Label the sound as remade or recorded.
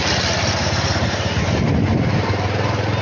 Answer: recorded